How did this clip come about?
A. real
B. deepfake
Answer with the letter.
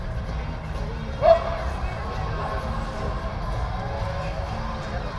A